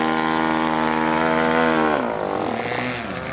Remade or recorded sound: recorded